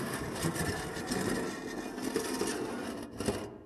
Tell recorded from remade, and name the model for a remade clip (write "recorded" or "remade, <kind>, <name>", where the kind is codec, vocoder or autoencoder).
recorded